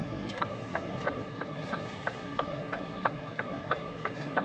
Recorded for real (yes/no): no